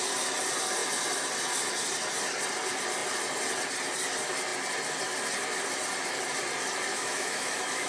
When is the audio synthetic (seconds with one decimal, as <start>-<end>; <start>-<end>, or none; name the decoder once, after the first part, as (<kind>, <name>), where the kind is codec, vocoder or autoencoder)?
6.9-7.9 (autoencoder, DAC-VAE)

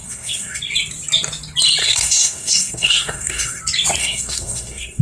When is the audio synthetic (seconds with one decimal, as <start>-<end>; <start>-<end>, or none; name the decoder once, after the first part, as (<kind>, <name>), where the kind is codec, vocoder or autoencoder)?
0.0-0.6 (codec, SNAC); 1.8-3.6; 4.0-5.0

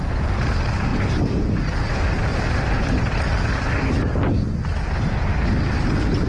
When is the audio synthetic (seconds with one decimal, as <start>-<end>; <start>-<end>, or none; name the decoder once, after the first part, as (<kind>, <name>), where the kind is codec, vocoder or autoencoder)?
none

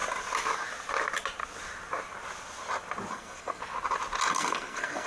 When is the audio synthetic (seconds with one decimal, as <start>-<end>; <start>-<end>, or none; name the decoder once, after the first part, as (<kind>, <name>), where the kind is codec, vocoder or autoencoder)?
3.1-3.6 (codec, SNAC); 4.3-5.1

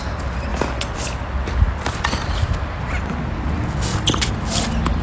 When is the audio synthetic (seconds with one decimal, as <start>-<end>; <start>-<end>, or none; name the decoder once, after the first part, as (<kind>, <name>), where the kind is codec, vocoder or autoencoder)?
none

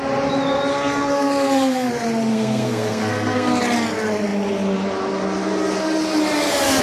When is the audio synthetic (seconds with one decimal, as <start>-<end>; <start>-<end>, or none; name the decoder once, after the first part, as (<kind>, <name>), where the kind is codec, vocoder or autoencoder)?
0.7-1.9 (codec, SNAC); 2.3-3.6

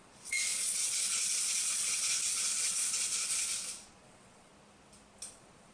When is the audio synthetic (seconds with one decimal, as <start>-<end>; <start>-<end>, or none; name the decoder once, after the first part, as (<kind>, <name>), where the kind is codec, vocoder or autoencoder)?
0.0-4.5 (vocoder, Vocos); 5.3-5.7